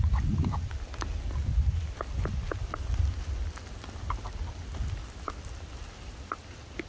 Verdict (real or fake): real